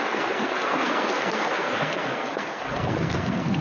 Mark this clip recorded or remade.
remade